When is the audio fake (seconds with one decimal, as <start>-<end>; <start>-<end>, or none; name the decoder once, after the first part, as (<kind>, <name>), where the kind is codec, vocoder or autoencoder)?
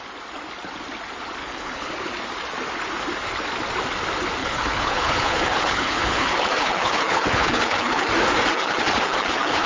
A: 1.4-1.9 (codec, HILCodec); 4.4-8.1; 8.5-9.7